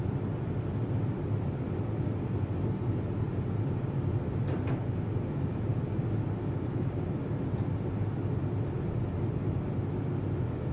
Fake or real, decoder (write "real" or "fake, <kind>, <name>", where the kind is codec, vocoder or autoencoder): real